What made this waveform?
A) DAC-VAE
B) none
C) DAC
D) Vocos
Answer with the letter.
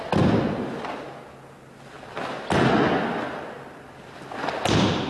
B